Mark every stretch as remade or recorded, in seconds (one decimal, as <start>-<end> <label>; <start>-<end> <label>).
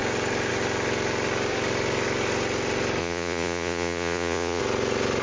0.0-3.0 recorded; 3.0-4.6 remade; 4.6-5.2 recorded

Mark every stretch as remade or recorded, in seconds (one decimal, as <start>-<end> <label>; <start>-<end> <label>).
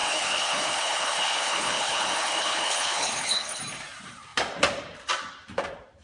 0.0-3.6 remade; 3.6-6.0 recorded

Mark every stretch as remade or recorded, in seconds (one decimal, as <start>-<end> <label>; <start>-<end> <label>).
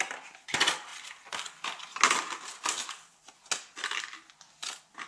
0.0-5.1 recorded